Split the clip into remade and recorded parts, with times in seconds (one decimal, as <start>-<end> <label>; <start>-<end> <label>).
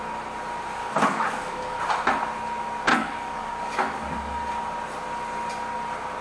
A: 0.0-0.8 recorded; 0.8-1.9 remade; 1.9-2.9 recorded; 2.9-4.5 remade; 4.5-6.2 recorded